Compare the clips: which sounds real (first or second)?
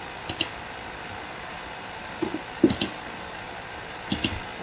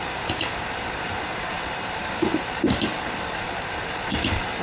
first